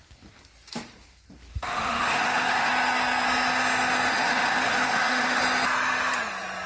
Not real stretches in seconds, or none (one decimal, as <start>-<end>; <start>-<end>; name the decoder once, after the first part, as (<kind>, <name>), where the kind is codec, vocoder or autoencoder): 1.5-2.7 (autoencoder, DAC-VAE); 4.1-5.4